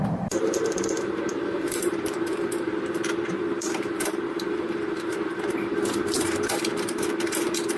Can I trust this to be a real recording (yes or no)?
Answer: no